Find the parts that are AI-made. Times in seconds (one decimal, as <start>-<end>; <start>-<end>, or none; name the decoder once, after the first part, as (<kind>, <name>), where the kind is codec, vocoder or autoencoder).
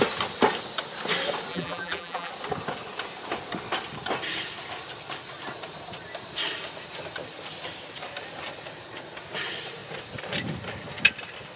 1.5-2.3 (vocoder, BigVGAN v2)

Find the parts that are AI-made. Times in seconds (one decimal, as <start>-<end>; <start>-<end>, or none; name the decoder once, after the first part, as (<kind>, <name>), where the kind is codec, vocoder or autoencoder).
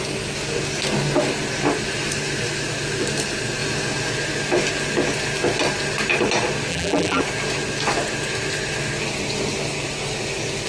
6.7-7.2 (vocoder, BigVGAN v2)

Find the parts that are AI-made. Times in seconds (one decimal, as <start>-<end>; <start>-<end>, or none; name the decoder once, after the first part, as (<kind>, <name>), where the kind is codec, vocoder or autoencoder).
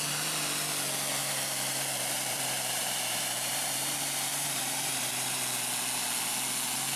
1.2-5.4 (vocoder, BigVGAN v2)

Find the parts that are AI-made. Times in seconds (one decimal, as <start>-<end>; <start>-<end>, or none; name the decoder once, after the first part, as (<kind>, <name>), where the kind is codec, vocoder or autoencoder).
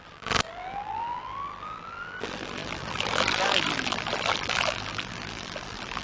0.0-6.0 (vocoder, BigVGAN v2)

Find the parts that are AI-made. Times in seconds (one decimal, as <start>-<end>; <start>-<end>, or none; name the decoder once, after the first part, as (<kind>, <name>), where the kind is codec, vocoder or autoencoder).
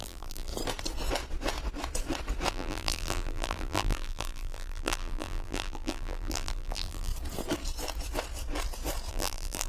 0.0-0.5 (vocoder, BigVGAN v2); 2.5-7.1; 9.1-9.7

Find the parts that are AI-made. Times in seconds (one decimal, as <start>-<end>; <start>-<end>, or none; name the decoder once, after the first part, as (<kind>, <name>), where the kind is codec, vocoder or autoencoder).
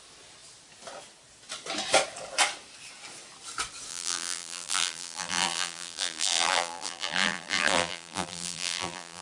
3.9-9.2 (vocoder, BigVGAN v2)